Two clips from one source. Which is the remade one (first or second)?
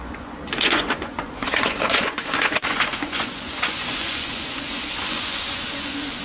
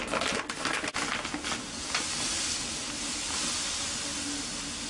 first